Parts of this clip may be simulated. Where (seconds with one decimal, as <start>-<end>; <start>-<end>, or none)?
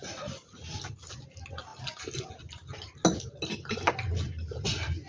none